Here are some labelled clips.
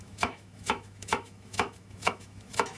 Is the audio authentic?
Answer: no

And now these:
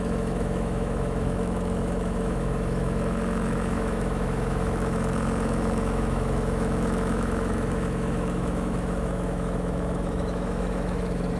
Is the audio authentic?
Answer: no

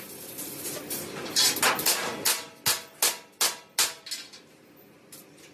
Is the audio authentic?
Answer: yes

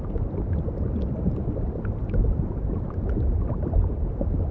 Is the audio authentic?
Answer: yes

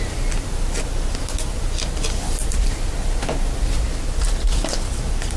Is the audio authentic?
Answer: yes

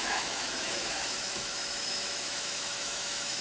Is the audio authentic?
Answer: no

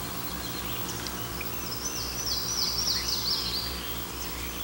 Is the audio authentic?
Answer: yes